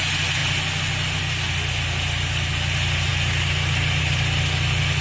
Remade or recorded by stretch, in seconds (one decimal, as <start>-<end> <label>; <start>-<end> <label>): 0.0-5.0 recorded